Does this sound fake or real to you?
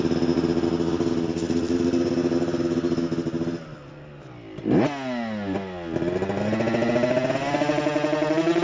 real